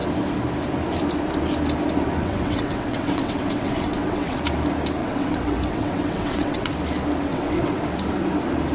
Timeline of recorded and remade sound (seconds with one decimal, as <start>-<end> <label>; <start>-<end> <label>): 0.0-2.2 recorded; 2.2-4.4 remade; 4.4-5.0 recorded; 5.0-6.7 remade; 6.7-7.3 recorded; 7.3-7.8 remade; 7.8-8.7 recorded